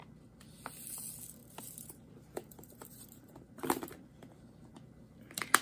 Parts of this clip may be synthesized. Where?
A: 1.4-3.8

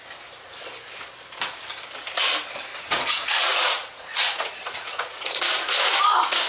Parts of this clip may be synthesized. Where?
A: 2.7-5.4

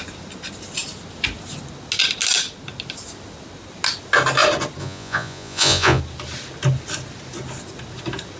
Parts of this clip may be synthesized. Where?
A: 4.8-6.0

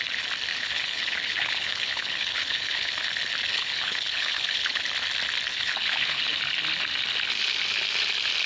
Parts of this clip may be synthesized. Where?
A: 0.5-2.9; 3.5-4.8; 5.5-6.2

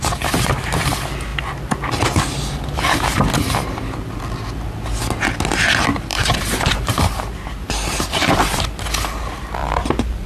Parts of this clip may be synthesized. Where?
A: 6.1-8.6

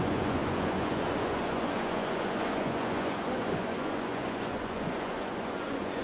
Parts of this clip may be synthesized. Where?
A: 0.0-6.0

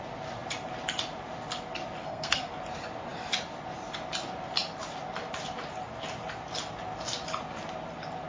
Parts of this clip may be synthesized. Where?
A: 2.0-2.5